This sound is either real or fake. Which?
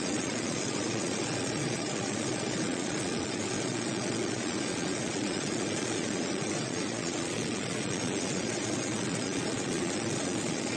fake